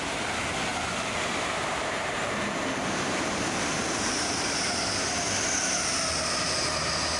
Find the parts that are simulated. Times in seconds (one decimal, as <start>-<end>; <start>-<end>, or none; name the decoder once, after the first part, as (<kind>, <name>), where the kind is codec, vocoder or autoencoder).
0.7-5.0 (vocoder, BigVGAN v2)

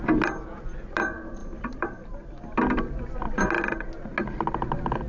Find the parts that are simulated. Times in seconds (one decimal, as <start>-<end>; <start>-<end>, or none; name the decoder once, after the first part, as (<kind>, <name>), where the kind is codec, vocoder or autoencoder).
1.4-2.4 (vocoder, BigVGAN v2)

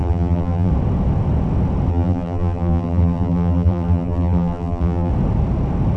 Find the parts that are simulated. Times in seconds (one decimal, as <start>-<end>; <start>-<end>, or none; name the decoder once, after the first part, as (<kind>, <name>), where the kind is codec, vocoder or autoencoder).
0.0-0.7 (vocoder, BigVGAN v2); 1.9-5.1

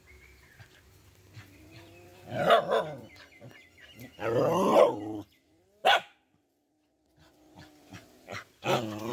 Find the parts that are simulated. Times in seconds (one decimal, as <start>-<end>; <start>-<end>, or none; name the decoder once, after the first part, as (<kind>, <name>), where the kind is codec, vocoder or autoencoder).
5.8-6.7 (vocoder, BigVGAN v2)

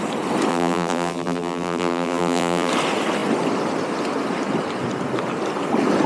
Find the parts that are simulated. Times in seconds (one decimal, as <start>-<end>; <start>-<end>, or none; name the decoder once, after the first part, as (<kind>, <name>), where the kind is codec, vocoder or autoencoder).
0.5-2.7 (vocoder, BigVGAN v2)

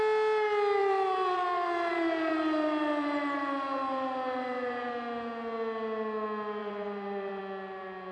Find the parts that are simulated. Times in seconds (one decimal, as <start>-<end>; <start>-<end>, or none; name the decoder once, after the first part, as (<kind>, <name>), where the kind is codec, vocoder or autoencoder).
0.8-4.9 (vocoder, BigVGAN v2); 6.6-7.4